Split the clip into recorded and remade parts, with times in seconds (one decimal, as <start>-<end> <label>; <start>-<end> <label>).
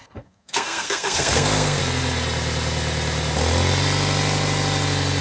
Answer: 0.0-1.8 remade; 1.8-5.2 recorded